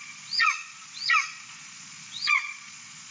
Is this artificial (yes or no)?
yes